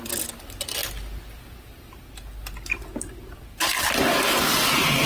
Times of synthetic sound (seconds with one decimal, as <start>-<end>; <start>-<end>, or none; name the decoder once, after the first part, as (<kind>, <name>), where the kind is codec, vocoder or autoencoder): none